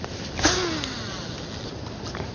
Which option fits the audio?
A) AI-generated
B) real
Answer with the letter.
B